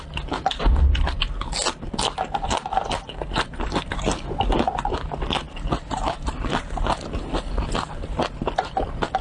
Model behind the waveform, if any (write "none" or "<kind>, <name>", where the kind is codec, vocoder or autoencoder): vocoder, BigVGAN v2